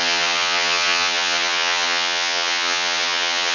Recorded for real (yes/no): no